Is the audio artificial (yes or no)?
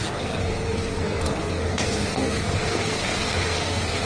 yes